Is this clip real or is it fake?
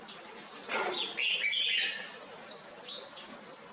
real